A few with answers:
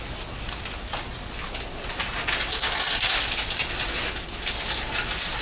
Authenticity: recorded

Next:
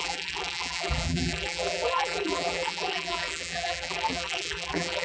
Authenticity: remade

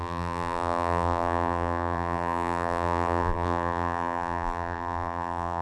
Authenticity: remade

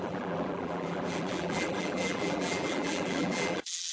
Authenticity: remade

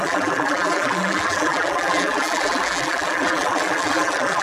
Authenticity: remade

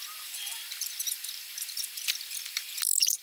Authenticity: remade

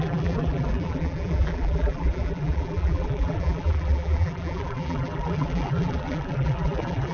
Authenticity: remade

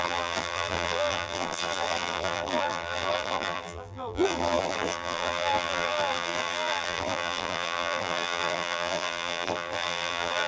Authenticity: remade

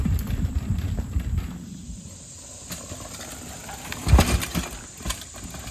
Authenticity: recorded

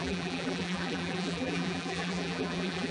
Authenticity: remade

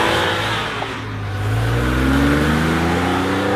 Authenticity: recorded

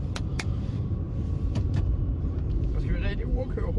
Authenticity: remade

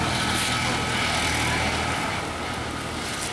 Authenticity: recorded